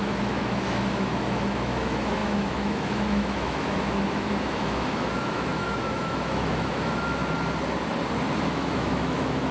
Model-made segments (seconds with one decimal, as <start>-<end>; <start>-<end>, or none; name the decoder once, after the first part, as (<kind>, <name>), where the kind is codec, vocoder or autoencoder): 0.0-7.2 (autoencoder, DAC-VAE); 8.4-9.5